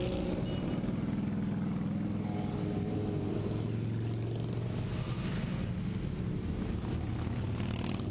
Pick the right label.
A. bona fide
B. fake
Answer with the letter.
A